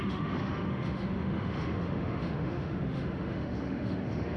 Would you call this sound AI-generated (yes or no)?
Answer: yes